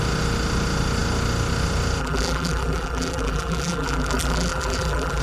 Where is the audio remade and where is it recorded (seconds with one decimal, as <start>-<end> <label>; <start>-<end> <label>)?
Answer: 0.0-2.0 recorded; 2.0-5.2 remade